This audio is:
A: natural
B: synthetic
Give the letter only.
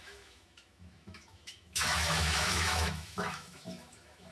B